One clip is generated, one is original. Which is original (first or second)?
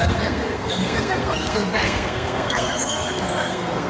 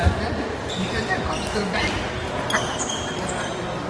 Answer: second